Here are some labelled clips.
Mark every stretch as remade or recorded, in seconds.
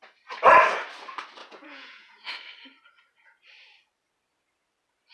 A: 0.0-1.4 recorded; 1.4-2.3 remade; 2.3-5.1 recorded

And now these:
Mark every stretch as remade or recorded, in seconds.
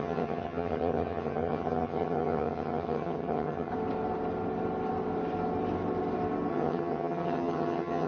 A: 0.0-3.7 remade; 3.7-6.5 recorded; 6.5-8.1 remade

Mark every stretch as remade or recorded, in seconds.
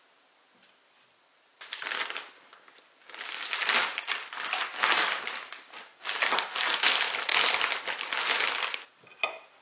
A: 0.0-9.6 recorded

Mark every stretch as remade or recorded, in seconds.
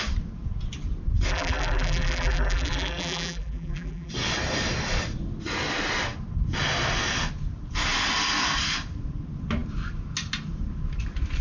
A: 0.0-1.3 recorded; 1.3-4.1 remade; 4.1-11.4 recorded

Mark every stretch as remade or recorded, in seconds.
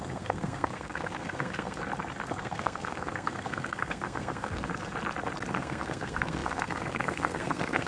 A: 0.0-1.8 remade; 1.8-2.3 recorded; 2.3-4.7 remade; 4.7-5.5 recorded; 5.5-7.9 remade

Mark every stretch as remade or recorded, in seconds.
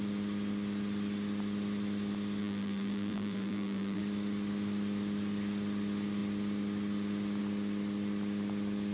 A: 0.0-2.4 recorded; 2.4-4.0 remade; 4.0-8.9 recorded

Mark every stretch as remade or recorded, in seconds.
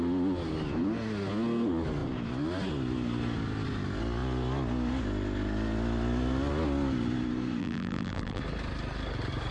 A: 0.0-7.6 recorded; 7.6-8.4 remade; 8.4-9.5 recorded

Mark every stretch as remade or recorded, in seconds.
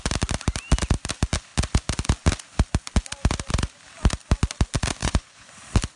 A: 0.0-5.0 recorded; 5.0-5.5 remade; 5.5-6.0 recorded